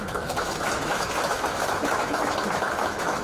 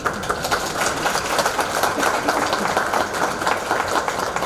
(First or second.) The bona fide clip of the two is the second